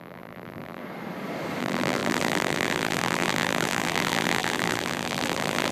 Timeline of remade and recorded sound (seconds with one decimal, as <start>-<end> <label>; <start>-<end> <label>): 0.0-0.8 remade; 0.8-1.6 recorded; 1.6-5.7 remade